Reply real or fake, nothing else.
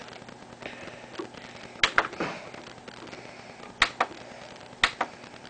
real